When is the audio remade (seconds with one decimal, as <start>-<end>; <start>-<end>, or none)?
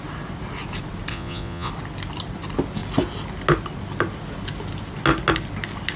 1.1-1.7